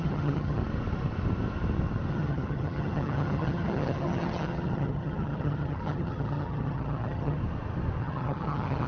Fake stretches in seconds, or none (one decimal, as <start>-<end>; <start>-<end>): 0.0-0.6; 2.1-7.4; 8.0-8.9